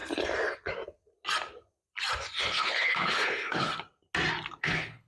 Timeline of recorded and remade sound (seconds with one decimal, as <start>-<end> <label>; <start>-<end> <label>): 0.0-2.4 recorded; 2.4-3.7 remade; 3.7-4.6 recorded; 4.6-5.1 remade